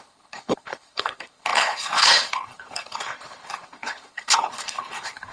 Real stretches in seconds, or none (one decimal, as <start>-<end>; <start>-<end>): none